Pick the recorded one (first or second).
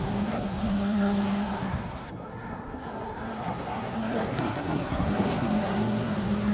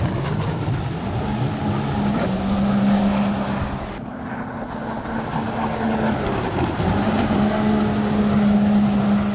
second